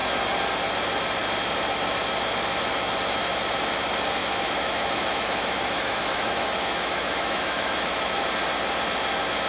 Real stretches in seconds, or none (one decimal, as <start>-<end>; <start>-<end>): 0.0-4.2; 8.2-9.5